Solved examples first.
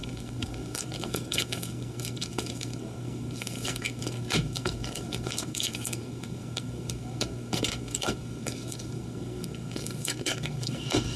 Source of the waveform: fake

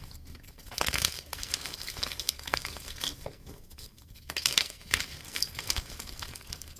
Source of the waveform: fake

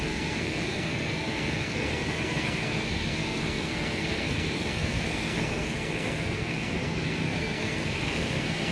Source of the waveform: fake